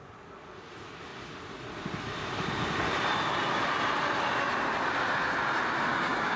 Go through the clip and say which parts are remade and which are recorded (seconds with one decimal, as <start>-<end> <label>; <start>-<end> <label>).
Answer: 0.0-5.9 recorded; 5.9-6.4 remade